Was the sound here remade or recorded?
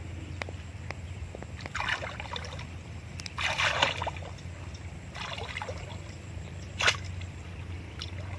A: recorded